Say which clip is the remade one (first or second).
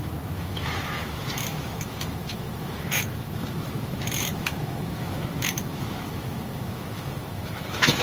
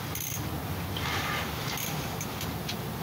first